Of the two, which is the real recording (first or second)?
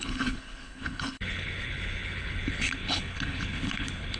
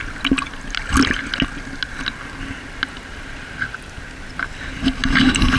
second